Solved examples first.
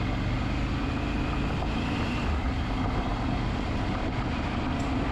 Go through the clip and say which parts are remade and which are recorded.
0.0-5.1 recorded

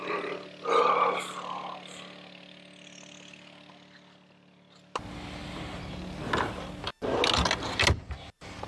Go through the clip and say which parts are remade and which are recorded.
0.0-8.7 recorded

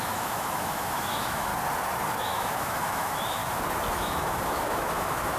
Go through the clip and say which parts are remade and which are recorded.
0.0-1.5 remade; 1.5-2.2 recorded; 2.2-3.4 remade; 3.4-3.9 recorded; 3.9-5.4 remade

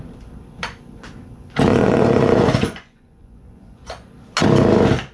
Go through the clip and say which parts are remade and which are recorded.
0.0-1.7 recorded; 1.7-4.1 remade; 4.1-5.1 recorded